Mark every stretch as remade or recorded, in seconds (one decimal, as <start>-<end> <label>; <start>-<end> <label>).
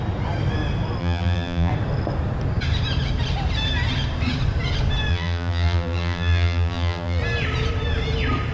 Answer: 0.0-1.0 recorded; 1.0-1.7 remade; 1.7-5.1 recorded; 5.1-7.2 remade; 7.2-8.5 recorded